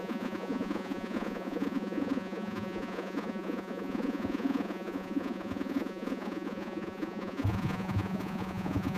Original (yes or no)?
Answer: no